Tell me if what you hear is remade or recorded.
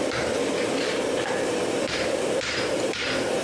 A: remade